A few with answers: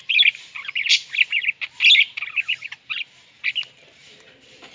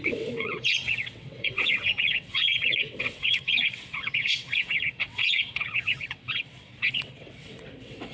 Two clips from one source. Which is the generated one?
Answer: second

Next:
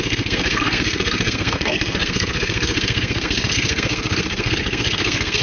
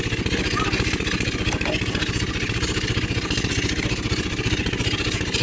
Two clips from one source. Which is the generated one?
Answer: first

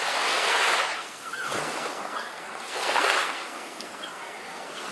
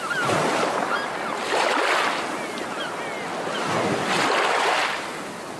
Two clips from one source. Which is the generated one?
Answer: first